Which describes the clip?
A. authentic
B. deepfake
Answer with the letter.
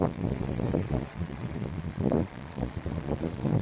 B